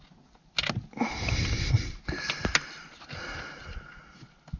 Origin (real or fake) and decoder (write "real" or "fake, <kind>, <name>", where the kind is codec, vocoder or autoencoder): real